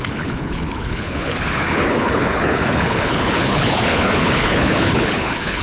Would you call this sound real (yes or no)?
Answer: no